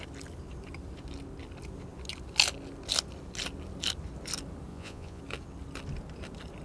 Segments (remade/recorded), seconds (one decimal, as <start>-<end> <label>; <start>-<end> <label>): 0.0-4.7 recorded; 4.7-5.2 remade; 5.2-6.6 recorded